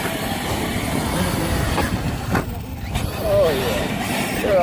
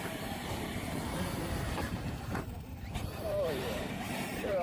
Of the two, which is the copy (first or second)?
second